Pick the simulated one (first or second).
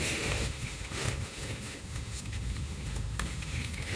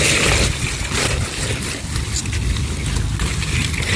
first